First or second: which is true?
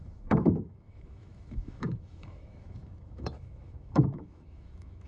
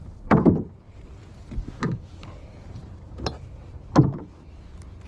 second